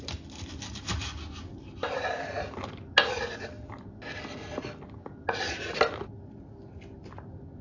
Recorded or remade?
recorded